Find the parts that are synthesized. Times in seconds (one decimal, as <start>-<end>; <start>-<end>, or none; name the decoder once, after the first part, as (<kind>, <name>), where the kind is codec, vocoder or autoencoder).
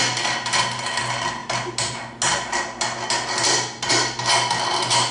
none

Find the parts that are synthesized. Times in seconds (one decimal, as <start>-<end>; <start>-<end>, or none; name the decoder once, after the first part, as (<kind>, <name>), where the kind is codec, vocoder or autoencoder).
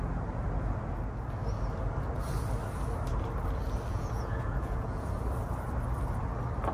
3.9-5.1 (vocoder, Vocos)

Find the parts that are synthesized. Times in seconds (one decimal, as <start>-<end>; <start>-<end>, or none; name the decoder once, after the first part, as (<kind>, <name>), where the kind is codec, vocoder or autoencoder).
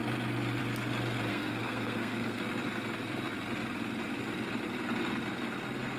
1.3-2.4 (codec, SNAC)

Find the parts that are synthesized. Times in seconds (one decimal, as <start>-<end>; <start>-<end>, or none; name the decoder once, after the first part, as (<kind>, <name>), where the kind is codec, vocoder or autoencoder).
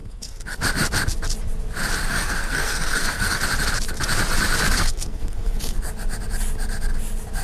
0.0-0.6 (codec, SNAC); 2.1-3.4; 4.6-5.9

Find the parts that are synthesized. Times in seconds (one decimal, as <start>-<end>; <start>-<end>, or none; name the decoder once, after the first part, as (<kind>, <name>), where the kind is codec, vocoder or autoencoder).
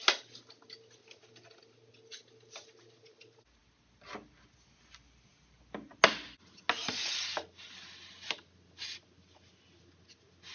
none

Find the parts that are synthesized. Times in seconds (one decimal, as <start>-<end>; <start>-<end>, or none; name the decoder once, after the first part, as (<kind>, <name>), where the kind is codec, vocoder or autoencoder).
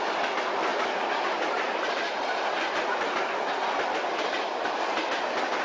none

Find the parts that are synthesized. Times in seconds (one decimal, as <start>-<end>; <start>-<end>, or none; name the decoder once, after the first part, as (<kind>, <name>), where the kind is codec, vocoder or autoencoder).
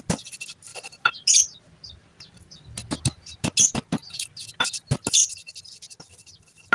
5.2-6.7 (vocoder, BigVGAN v2)